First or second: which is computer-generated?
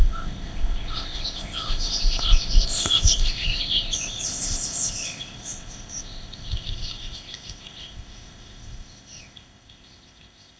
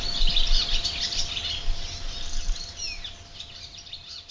first